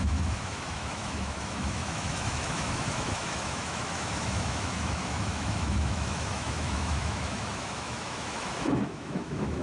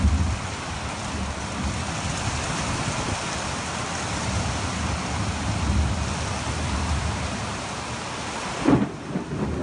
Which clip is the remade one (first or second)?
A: first